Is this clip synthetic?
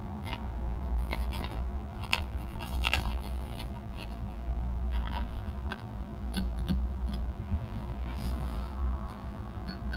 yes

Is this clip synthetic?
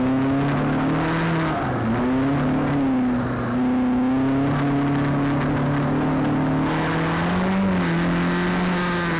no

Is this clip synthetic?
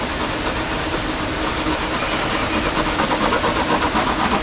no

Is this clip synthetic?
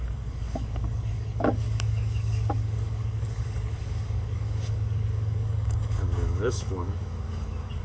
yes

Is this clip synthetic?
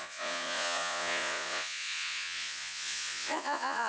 yes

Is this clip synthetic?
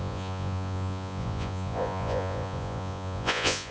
yes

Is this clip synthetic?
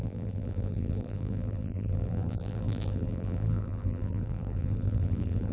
yes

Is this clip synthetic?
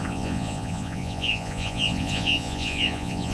yes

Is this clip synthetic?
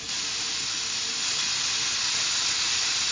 yes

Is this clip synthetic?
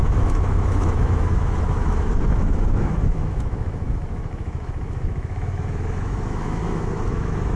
yes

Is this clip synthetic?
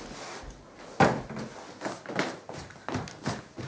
no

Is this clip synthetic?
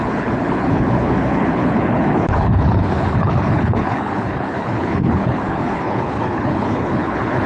yes